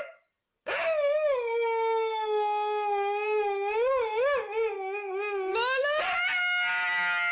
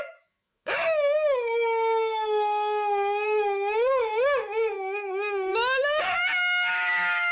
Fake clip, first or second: second